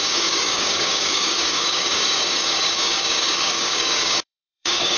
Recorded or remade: remade